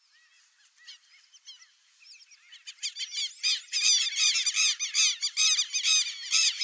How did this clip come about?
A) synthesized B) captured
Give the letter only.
B